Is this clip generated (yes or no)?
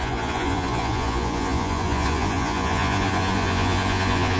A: yes